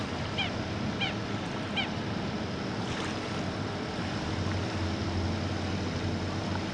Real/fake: real